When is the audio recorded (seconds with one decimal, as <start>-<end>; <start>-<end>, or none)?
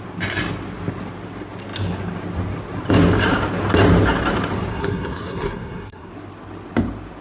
0.0-4.7; 6.1-7.2